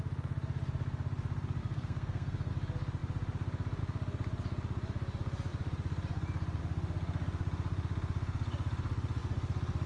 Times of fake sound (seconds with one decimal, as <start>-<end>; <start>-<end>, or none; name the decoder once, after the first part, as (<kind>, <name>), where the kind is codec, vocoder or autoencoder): 1.6-2.5 (codec, SNAC)